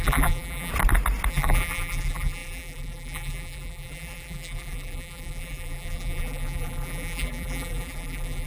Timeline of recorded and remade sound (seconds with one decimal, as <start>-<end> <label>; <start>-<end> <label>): 0.0-0.7 remade; 0.7-1.3 recorded; 1.3-8.5 remade